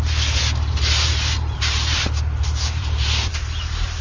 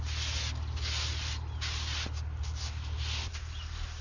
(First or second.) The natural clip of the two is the second